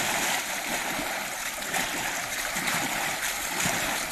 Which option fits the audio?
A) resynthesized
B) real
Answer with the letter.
B